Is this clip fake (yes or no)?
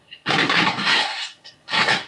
yes